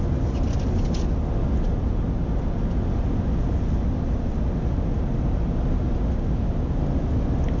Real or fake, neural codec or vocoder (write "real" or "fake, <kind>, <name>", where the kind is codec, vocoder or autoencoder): real